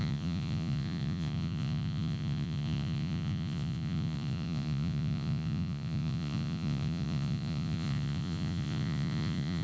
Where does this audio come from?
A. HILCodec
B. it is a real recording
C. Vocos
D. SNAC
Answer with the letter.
C